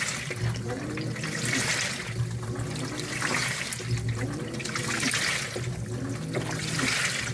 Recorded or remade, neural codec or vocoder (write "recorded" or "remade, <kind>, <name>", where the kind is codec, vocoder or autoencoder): recorded